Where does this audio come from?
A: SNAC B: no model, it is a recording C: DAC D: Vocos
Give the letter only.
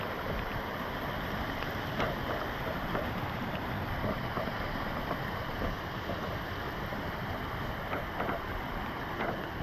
B